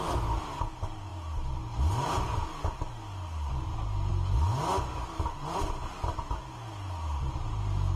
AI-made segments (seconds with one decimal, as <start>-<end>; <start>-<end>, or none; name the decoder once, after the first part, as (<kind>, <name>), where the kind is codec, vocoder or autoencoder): none